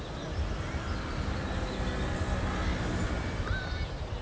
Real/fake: real